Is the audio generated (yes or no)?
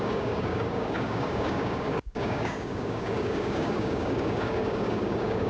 yes